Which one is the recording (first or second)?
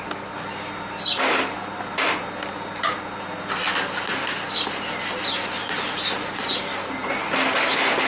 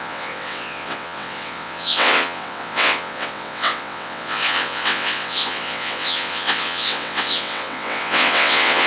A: first